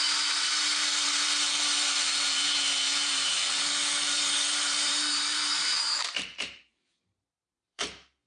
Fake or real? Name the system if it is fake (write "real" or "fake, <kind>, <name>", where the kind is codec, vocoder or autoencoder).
fake, vocoder, BigVGAN v2